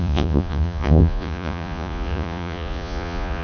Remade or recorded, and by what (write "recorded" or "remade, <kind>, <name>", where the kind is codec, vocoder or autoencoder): remade, vocoder, Vocos